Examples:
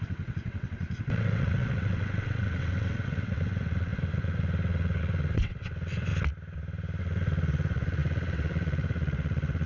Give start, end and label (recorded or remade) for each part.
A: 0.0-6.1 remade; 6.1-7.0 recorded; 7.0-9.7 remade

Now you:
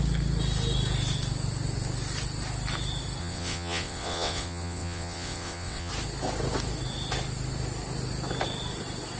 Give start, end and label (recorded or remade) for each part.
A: 0.0-3.2 recorded; 3.2-5.9 remade; 5.9-9.2 recorded

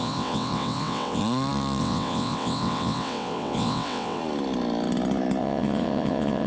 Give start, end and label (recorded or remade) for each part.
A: 0.0-1.2 remade; 1.2-1.8 recorded; 1.8-4.2 remade; 4.2-5.4 recorded; 5.4-6.5 remade